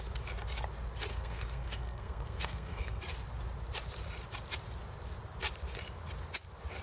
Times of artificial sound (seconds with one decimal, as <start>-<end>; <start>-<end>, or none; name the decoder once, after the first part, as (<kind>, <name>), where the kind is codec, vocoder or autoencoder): 1.1-3.0 (codec, SNAC)